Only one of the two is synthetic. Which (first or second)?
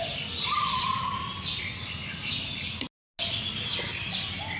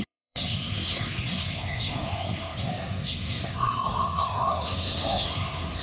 second